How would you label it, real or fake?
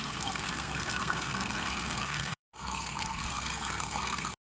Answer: fake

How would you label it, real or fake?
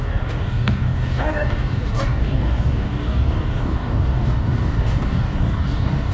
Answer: fake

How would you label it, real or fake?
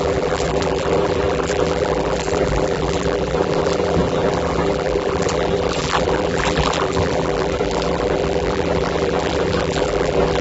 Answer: fake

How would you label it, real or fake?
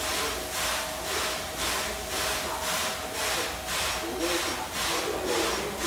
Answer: real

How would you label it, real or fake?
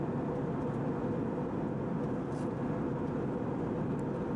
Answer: real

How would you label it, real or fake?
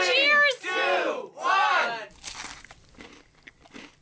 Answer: real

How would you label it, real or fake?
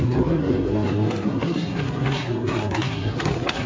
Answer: fake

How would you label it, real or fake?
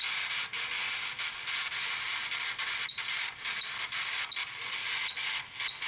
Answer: real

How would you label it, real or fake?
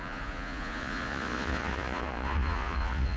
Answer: fake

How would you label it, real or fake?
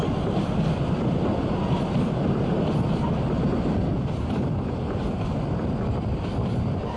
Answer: real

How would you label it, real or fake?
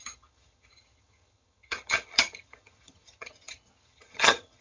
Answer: fake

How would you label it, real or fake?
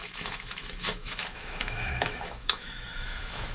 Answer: fake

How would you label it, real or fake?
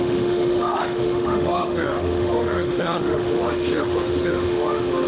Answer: fake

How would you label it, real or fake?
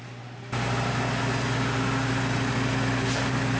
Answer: real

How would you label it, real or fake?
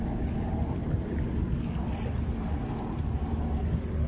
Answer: real